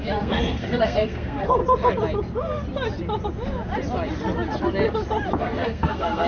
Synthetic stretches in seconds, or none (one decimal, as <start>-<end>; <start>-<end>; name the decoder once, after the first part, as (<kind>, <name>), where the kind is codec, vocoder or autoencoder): 0.0-1.6 (codec, SNAC); 5.4-6.3